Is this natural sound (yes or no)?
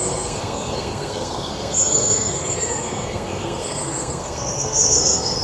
no